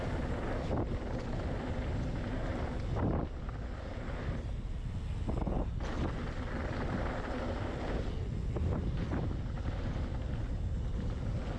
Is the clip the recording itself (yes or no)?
yes